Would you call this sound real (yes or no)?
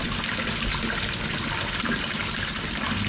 yes